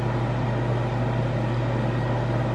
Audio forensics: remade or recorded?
recorded